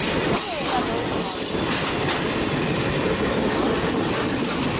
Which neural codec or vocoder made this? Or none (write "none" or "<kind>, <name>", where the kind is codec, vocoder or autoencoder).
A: none